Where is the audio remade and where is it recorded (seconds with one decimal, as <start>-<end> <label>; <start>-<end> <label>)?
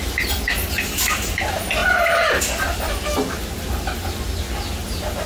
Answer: 0.0-5.3 recorded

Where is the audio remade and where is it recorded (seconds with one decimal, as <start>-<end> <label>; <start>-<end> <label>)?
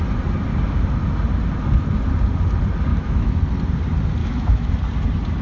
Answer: 0.0-2.9 recorded; 2.9-3.4 remade; 3.4-4.2 recorded; 4.2-4.7 remade; 4.7-5.4 recorded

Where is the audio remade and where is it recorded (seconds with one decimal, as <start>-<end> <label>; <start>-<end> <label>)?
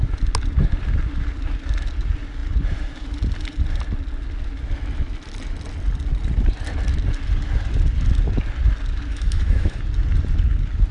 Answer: 0.0-9.1 recorded; 9.1-9.8 remade; 9.8-10.9 recorded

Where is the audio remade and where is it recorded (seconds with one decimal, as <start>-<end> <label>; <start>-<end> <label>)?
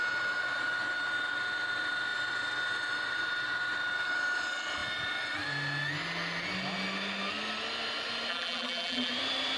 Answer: 0.0-8.3 recorded; 8.3-9.1 remade; 9.1-9.6 recorded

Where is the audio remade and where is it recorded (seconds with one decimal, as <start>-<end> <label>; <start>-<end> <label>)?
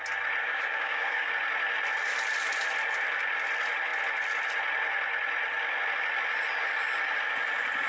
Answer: 0.0-0.4 recorded; 0.4-1.3 remade; 1.3-7.9 recorded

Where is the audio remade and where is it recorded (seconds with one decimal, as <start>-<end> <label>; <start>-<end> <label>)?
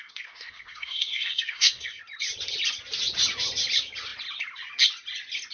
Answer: 0.0-2.0 remade; 2.0-5.5 recorded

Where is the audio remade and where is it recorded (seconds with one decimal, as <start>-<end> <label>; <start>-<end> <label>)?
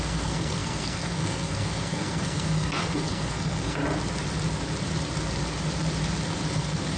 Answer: 0.0-3.8 remade; 3.8-6.5 recorded; 6.5-7.0 remade